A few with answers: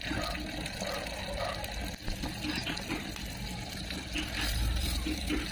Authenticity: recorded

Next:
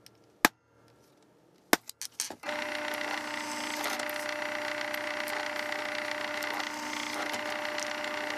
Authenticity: recorded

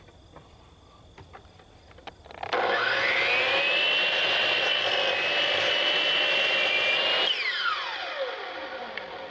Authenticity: recorded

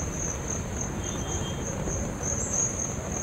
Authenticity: recorded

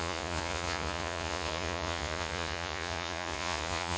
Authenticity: remade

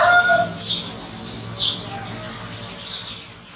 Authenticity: recorded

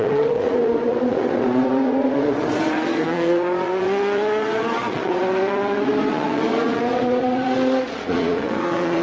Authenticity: remade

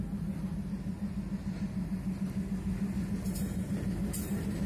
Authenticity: recorded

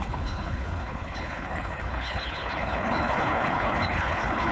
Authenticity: remade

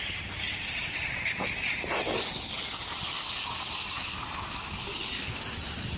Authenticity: recorded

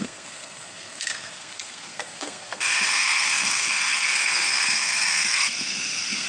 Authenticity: remade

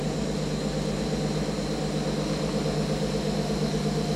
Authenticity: recorded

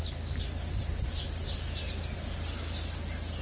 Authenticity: recorded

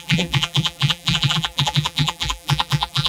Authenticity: remade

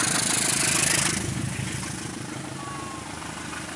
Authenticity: recorded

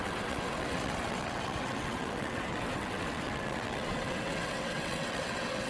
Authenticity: remade